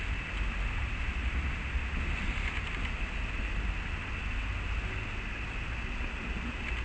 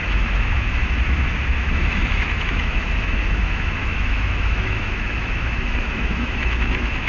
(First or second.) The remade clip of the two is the second